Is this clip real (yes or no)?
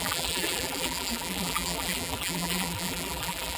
no